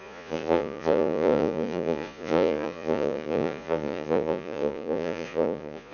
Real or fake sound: fake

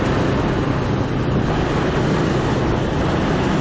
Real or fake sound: real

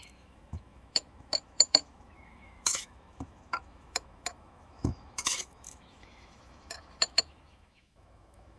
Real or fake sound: fake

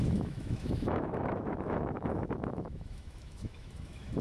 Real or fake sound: fake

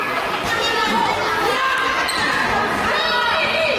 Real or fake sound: real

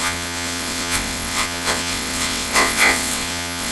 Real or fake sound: fake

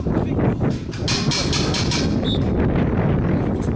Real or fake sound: real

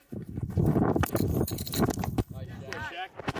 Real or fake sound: real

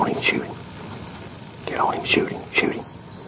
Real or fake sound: real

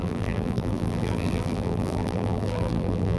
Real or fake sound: fake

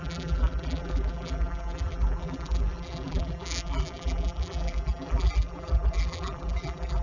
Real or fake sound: fake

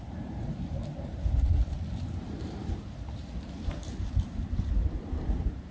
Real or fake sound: fake